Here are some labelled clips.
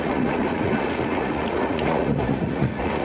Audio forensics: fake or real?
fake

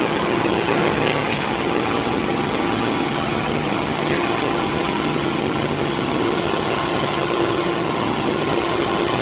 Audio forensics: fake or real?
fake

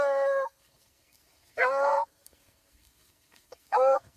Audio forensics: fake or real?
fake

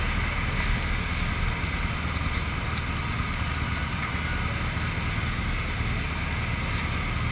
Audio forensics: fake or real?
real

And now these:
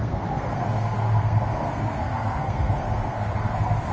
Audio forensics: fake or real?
fake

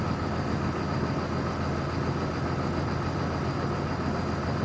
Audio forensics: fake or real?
real